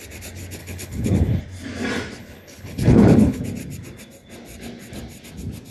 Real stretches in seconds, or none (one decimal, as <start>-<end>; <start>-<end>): 0.0-0.6; 1.4-2.2; 3.4-5.7